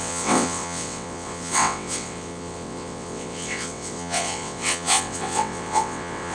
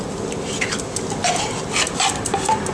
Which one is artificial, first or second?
first